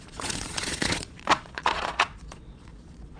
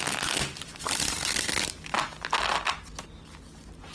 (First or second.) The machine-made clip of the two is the first